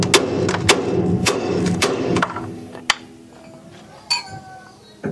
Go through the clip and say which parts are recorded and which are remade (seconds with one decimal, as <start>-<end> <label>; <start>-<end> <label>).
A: 0.0-1.2 recorded; 1.2-2.8 remade; 2.8-5.1 recorded